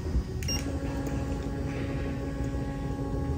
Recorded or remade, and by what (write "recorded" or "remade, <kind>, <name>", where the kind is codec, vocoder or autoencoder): recorded